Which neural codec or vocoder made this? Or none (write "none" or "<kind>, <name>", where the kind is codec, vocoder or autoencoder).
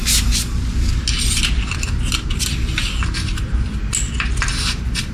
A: none